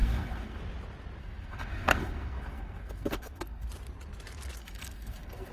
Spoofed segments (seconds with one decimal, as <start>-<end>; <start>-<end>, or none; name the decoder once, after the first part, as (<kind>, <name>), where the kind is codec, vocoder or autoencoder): 0.0-0.6 (codec, SNAC); 1.2-3.7; 4.6-5.5